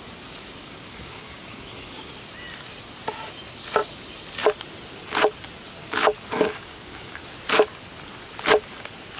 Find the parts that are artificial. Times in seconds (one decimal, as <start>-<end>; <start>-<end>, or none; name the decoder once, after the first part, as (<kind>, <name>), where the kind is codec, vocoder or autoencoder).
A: 0.6-2.1 (codec, DAC); 5.8-7.3